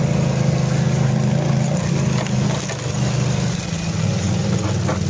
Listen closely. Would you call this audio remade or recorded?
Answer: recorded